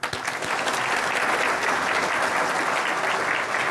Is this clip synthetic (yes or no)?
no